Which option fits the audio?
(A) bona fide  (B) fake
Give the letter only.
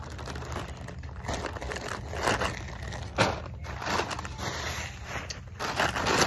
A